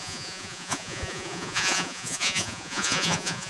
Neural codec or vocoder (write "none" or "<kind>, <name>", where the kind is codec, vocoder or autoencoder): vocoder, Vocos